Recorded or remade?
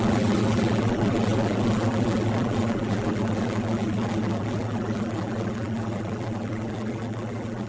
remade